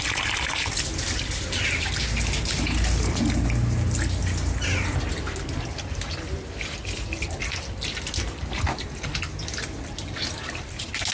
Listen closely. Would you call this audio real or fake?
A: real